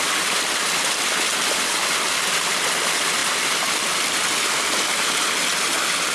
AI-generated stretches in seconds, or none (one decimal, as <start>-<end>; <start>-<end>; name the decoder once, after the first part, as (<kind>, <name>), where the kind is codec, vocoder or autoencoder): none